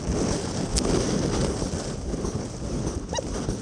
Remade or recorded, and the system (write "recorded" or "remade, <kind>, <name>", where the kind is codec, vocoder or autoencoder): recorded